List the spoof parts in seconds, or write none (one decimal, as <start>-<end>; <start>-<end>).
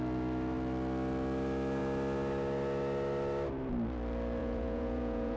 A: 4.4-5.4